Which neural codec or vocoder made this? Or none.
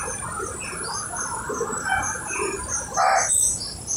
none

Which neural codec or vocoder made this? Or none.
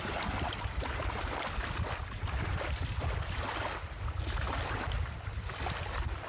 none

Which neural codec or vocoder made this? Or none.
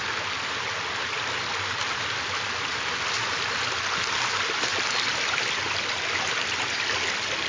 none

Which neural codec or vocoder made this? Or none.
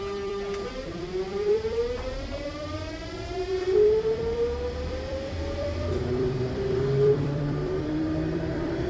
vocoder, BigVGAN v2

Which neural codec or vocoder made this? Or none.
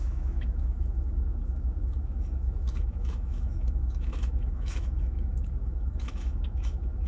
autoencoder, DAC-VAE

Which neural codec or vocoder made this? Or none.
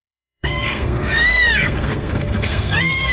codec, SNAC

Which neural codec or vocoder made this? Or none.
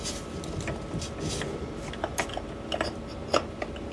none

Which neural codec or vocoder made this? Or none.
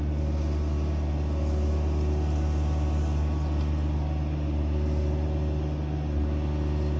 none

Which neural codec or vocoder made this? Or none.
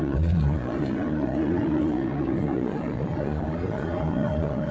vocoder, Vocos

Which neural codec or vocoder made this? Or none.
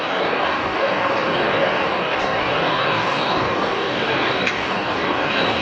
codec, DAC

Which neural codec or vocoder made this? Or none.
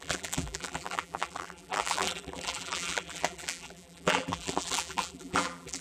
vocoder, BigVGAN v2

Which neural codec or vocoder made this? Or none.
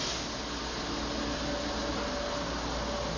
none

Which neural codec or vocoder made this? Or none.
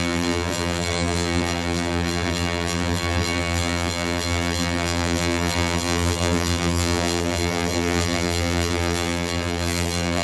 vocoder, BigVGAN v2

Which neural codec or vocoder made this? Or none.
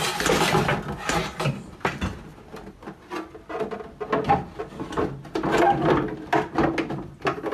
none